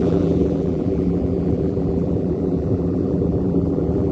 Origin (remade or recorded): remade